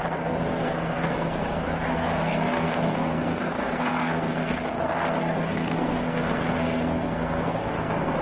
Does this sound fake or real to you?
fake